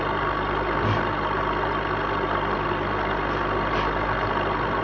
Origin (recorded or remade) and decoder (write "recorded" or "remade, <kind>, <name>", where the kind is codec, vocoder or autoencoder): recorded